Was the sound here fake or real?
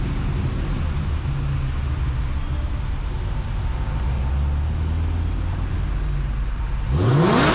real